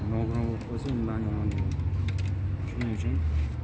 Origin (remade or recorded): recorded